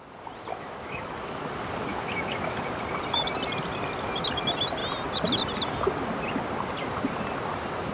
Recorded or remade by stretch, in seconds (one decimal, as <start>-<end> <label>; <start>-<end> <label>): 0.0-0.5 recorded; 0.5-1.4 remade; 1.4-1.9 recorded; 1.9-2.6 remade; 2.6-7.9 recorded